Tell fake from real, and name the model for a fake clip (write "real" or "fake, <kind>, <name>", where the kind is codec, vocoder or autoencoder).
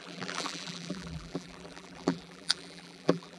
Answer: fake, vocoder, BigVGAN v2